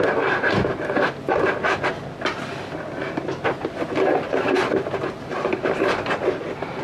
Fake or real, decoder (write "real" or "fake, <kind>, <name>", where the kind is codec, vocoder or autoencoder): real